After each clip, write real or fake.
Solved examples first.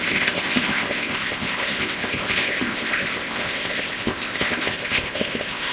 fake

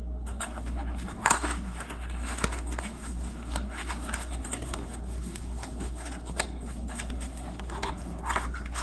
fake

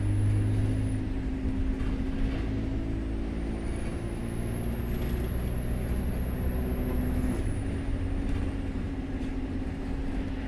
real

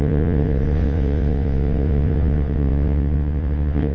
fake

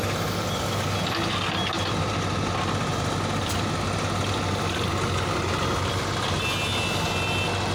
real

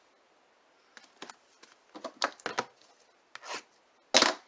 real